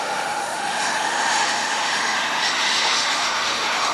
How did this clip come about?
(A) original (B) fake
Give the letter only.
B